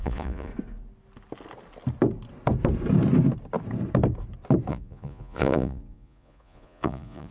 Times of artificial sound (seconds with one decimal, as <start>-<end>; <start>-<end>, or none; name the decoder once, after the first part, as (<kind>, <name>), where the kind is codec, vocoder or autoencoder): 0.0-0.5 (vocoder, Vocos); 4.7-7.3